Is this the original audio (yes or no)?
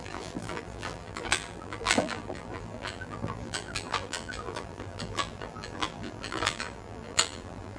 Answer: no